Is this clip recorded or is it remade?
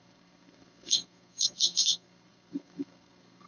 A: remade